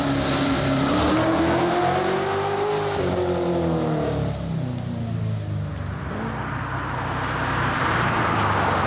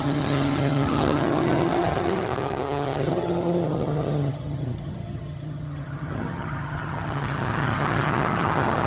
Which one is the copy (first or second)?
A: second